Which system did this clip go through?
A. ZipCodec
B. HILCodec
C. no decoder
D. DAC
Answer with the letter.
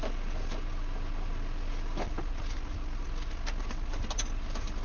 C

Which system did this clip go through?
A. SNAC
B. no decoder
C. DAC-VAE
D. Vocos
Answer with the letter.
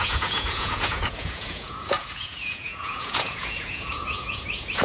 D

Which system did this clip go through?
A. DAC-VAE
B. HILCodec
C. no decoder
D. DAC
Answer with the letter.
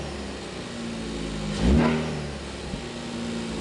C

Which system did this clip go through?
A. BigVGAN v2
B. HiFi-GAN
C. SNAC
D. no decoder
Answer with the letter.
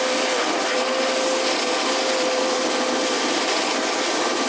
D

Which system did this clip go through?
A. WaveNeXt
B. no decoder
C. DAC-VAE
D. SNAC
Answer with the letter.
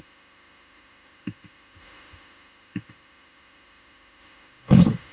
C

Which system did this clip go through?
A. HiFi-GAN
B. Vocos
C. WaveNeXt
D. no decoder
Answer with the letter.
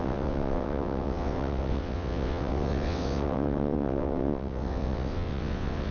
C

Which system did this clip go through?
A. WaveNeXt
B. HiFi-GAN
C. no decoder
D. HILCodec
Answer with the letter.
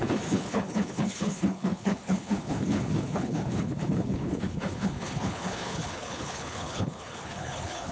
D